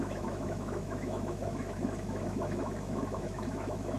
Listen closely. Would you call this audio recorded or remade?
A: remade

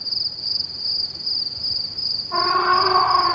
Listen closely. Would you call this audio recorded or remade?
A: recorded